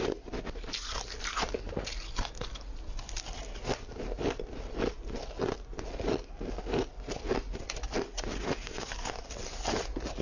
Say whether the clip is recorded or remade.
recorded